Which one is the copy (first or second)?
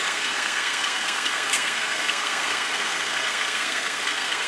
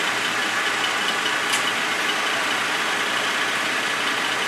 first